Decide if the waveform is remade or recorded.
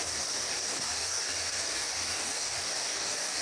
remade